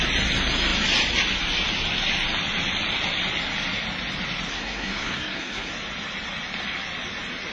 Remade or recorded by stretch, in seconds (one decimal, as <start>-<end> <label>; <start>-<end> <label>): 0.0-4.5 recorded; 4.5-5.7 remade; 5.7-7.5 recorded